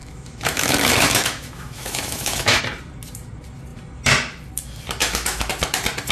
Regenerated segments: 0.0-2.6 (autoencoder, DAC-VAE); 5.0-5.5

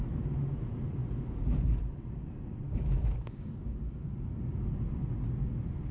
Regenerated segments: 3.0-3.8 (codec, DAC)

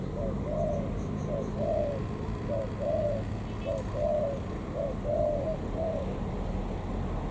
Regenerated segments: 4.1-4.6 (vocoder, BigVGAN v2)

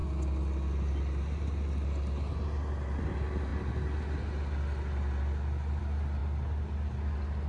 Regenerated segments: none

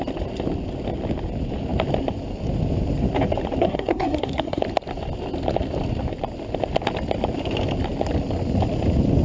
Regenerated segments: 3.6-4.6 (codec, SNAC)

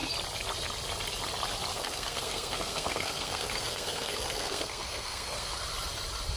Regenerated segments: 1.7-5.5 (codec, SNAC)

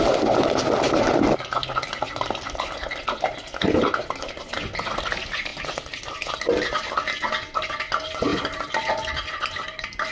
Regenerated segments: none